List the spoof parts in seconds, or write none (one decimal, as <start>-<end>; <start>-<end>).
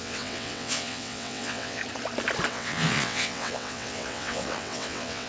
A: 0.0-1.8; 2.5-5.3